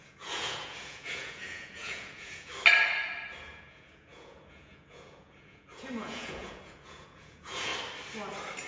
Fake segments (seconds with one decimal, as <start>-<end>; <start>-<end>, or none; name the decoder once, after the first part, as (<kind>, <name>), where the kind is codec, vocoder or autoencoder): 0.0-2.5 (vocoder, Vocos); 3.4-7.7